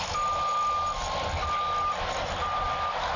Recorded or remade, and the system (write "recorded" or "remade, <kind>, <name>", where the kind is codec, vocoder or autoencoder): recorded